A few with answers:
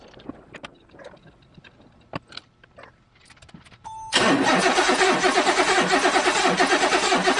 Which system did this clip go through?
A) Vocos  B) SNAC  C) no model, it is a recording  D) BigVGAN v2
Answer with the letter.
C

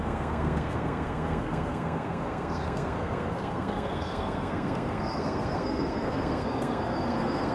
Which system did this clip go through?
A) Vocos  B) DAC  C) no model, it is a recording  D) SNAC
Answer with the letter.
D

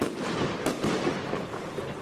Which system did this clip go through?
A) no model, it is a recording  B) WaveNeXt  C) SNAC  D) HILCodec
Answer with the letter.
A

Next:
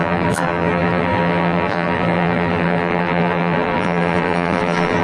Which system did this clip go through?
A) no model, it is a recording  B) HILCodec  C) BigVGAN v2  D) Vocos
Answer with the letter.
C